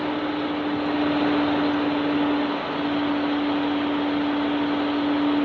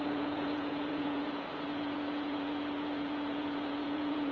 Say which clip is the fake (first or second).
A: second